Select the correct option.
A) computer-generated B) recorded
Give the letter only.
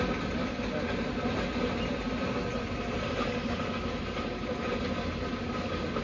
B